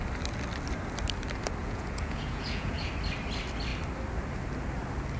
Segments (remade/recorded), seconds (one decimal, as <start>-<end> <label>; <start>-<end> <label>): 0.0-1.6 recorded; 1.6-2.9 remade; 2.9-5.2 recorded